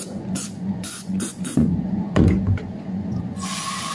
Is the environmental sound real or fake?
fake